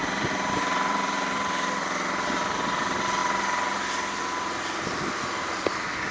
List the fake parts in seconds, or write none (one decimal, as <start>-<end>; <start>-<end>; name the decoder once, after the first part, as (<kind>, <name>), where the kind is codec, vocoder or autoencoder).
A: 0.0-3.2 (vocoder, BigVGAN v2); 5.4-6.1

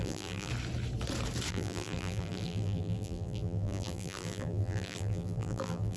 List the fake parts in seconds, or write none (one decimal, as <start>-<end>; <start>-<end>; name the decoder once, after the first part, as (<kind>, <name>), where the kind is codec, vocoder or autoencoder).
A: 0.0-0.5 (vocoder, BigVGAN v2); 1.5-6.0

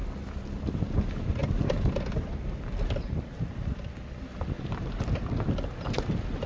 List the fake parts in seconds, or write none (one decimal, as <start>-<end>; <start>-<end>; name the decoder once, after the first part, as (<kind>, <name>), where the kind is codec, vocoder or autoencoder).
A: 1.4-5.3 (vocoder, BigVGAN v2)

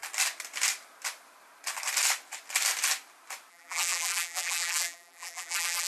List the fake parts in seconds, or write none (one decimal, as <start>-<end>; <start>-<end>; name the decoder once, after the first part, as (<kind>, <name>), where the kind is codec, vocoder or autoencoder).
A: 3.5-5.9 (vocoder, BigVGAN v2)

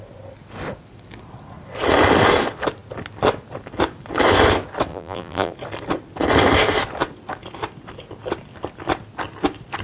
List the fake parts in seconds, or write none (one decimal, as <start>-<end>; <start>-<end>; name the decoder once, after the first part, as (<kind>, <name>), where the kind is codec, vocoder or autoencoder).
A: 4.9-5.5 (vocoder, BigVGAN v2)

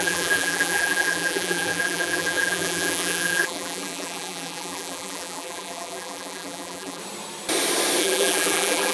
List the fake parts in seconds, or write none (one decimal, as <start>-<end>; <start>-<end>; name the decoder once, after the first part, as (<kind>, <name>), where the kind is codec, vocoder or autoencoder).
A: 0.0-7.0 (vocoder, BigVGAN v2); 8.0-8.9